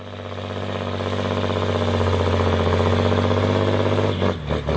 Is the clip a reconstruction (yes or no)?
no